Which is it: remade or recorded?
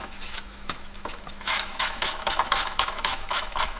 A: remade